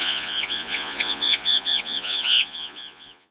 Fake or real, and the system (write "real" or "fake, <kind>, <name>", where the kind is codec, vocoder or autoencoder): fake, vocoder, Vocos